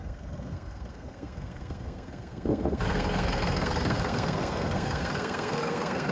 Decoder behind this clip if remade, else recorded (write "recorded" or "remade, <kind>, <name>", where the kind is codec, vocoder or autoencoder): remade, codec, SNAC